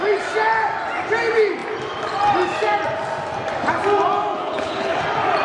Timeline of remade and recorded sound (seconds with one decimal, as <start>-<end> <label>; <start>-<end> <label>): 0.0-4.4 recorded; 4.4-5.0 remade; 5.0-5.4 recorded